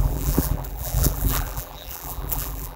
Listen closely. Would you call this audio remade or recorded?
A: remade